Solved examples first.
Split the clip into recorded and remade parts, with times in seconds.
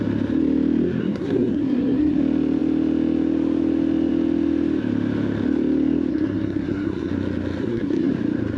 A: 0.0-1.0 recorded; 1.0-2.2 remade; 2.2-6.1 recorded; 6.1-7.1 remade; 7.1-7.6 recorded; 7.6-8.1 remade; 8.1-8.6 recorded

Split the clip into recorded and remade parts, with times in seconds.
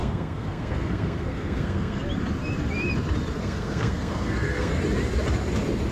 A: 0.0-2.0 remade; 2.0-3.4 recorded; 3.4-4.8 remade; 4.8-5.9 recorded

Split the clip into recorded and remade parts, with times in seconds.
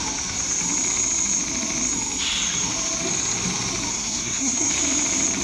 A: 0.0-3.9 recorded; 3.9-4.7 remade; 4.7-5.4 recorded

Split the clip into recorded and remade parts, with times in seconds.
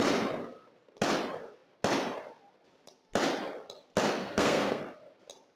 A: 0.0-4.2 recorded; 4.2-4.8 remade; 4.8-5.6 recorded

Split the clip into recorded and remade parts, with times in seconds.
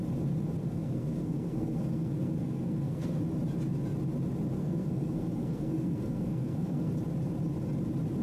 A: 0.0-0.6 recorded; 0.6-3.2 remade; 3.2-4.6 recorded; 4.6-7.0 remade; 7.0-8.2 recorded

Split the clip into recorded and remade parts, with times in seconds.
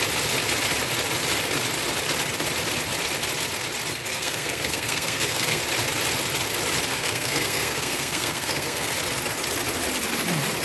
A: 0.0-4.0 recorded; 4.0-5.6 remade; 5.6-6.9 recorded; 6.9-8.9 remade; 8.9-10.6 recorded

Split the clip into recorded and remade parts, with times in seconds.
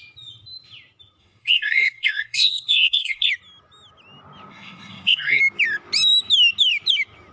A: 0.0-1.2 recorded; 1.2-3.3 remade; 3.3-4.5 recorded; 4.5-5.4 remade; 5.4-7.3 recorded